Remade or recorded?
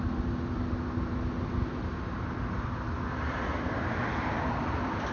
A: recorded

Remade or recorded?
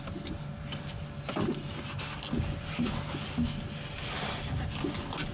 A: recorded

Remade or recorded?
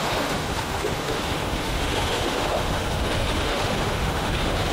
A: remade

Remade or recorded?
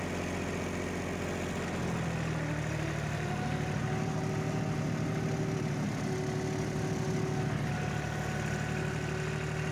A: recorded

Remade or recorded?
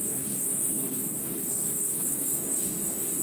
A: remade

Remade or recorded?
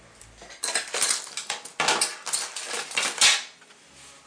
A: recorded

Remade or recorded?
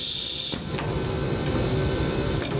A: recorded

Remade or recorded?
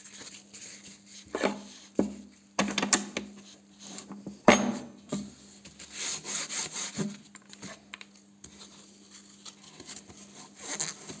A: recorded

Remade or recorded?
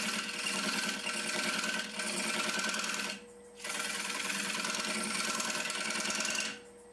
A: recorded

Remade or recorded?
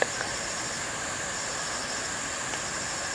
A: recorded